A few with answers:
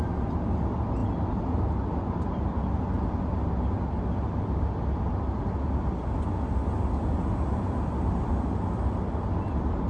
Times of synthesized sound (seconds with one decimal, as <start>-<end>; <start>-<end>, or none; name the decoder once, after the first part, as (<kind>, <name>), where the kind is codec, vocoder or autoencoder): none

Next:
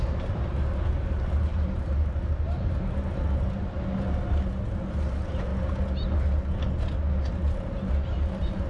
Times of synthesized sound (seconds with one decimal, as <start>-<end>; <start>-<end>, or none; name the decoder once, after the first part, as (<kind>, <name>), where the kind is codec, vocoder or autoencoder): 0.0-3.1 (vocoder, BigVGAN v2); 4.9-5.5; 7.2-8.7

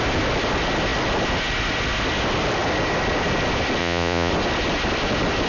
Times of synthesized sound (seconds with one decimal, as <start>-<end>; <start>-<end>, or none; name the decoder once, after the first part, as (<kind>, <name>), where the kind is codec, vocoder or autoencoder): 3.8-4.3 (vocoder, Vocos)

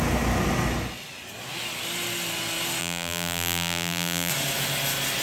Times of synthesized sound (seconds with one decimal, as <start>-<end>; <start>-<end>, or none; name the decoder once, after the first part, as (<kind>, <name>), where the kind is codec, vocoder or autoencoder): 2.8-4.3 (vocoder, BigVGAN v2)

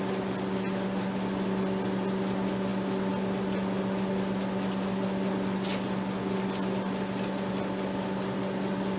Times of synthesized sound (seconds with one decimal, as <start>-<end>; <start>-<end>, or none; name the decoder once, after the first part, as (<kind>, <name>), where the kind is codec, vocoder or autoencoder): none